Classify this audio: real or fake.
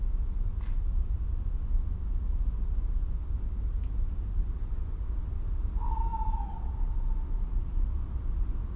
real